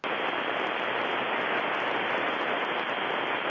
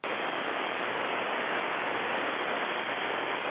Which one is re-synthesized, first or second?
second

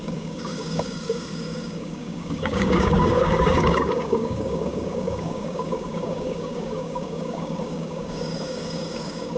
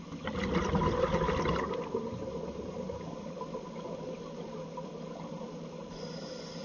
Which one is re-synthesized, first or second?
first